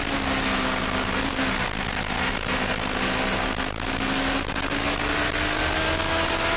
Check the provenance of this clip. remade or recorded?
recorded